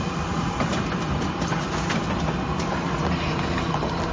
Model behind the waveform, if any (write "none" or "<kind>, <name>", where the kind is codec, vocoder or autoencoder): none